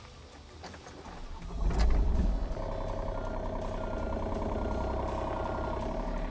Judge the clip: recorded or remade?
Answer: recorded